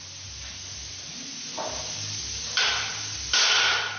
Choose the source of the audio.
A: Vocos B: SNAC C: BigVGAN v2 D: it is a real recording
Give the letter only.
D